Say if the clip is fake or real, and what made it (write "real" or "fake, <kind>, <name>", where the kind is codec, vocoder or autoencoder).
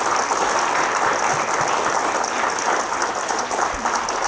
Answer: real